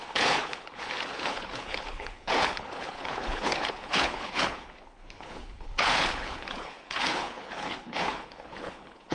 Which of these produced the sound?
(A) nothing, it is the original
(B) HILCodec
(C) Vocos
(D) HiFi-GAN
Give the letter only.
B